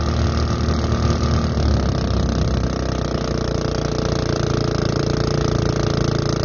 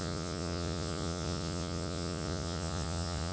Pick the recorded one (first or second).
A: first